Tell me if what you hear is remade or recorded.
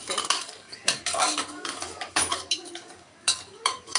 remade